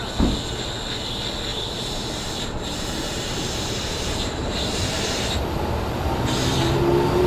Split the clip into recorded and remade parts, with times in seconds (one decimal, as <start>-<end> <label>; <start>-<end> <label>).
0.0-1.5 recorded; 1.5-5.9 remade; 5.9-7.3 recorded